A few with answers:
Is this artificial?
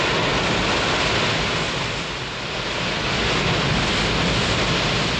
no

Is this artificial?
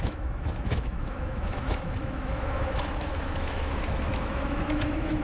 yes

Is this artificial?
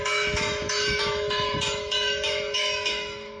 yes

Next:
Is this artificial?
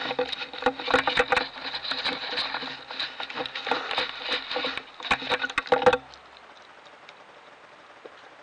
no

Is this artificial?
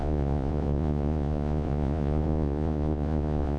yes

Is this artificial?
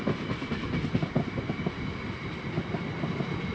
no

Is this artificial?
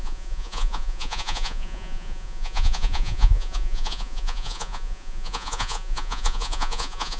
yes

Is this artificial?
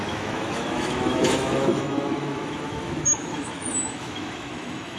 yes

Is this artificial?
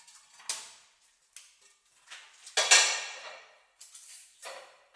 no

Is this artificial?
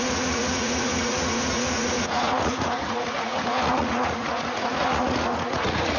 yes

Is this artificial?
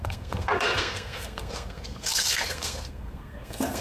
yes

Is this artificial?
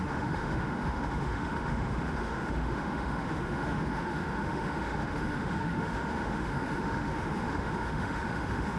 yes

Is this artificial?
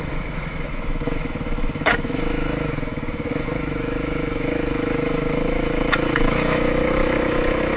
yes